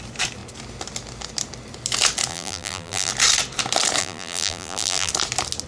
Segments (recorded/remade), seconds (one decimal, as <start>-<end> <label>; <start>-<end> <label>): 0.0-2.3 recorded; 2.3-3.1 remade; 3.1-4.0 recorded; 4.0-5.1 remade; 5.1-5.7 recorded